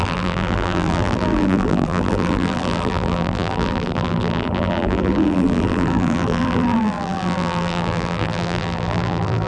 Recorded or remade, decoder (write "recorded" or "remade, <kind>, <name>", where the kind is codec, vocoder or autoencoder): remade, vocoder, BigVGAN v2